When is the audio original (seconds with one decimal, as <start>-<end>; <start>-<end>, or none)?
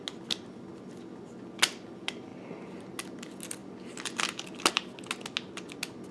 0.0-6.1